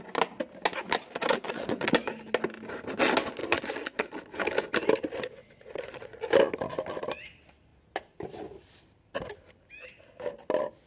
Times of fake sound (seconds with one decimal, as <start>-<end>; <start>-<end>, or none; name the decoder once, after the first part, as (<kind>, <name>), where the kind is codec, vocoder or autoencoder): 1.3-2.1 (vocoder, Vocos); 3.4-4.1; 5.4-6.2